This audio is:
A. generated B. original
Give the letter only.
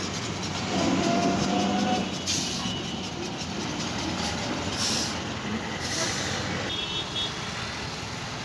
B